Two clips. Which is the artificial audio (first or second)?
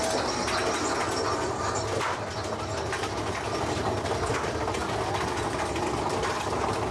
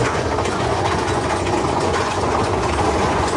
second